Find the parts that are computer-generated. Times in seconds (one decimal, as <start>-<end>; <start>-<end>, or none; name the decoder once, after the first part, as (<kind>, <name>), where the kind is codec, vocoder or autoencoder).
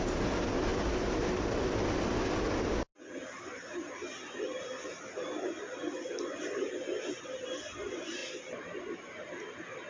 none